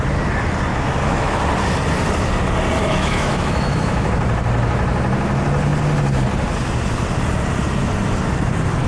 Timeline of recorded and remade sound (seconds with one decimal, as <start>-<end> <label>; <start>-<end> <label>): 0.0-0.7 recorded; 0.7-1.4 remade; 1.4-2.8 recorded; 2.8-4.1 remade; 4.1-8.9 recorded